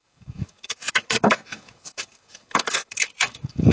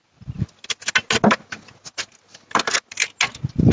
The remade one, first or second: first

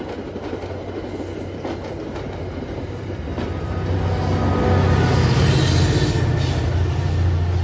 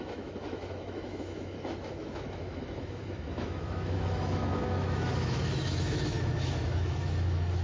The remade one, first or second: second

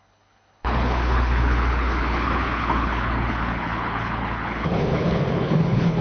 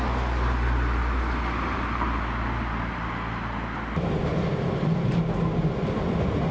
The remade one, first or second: first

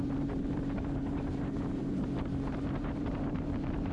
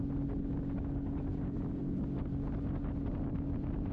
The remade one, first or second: first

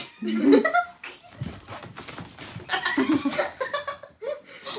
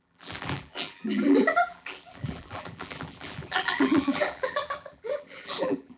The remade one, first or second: second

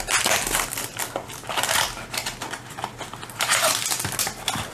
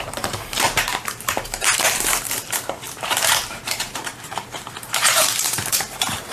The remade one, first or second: second